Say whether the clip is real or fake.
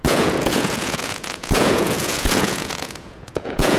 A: fake